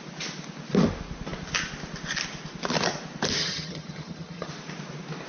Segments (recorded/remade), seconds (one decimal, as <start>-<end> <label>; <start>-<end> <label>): 0.0-3.4 recorded; 3.4-4.5 remade; 4.5-5.3 recorded